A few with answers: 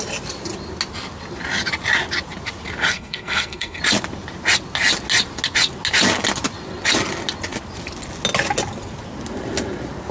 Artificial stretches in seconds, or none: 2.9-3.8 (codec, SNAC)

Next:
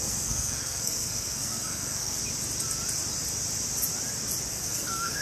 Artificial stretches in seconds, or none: 0.0-2.2 (codec, SNAC); 4.5-5.2

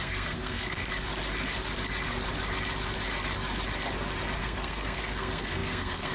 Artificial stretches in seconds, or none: 0.0-0.8 (codec, SNAC); 4.4-6.1

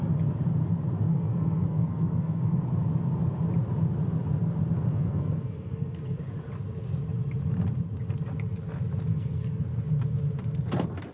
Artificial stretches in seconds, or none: 1.1-2.6 (codec, SNAC); 4.9-6.2; 9.1-9.6

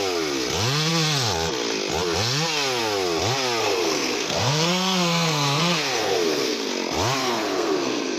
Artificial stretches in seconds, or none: 3.6-6.7 (codec, SNAC); 7.2-8.2